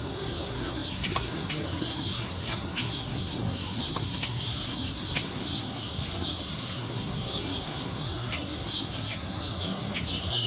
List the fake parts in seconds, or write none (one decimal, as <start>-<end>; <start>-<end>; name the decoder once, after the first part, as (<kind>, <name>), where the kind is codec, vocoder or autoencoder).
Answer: 0.0-10.5 (codec, SNAC)